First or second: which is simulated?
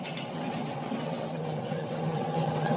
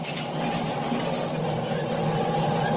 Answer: first